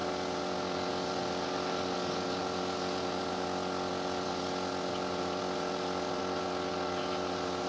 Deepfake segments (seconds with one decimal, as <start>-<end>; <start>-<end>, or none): none